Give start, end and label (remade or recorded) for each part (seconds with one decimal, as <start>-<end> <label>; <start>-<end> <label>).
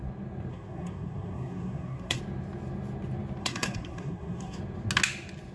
0.0-0.5 recorded; 0.5-2.2 remade; 2.2-3.4 recorded; 3.4-4.6 remade; 4.6-5.5 recorded